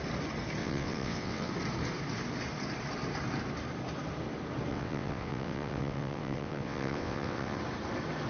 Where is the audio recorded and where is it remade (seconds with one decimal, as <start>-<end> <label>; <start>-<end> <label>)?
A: 0.0-0.6 recorded; 0.6-1.5 remade; 1.5-4.7 recorded; 4.7-7.6 remade; 7.6-8.3 recorded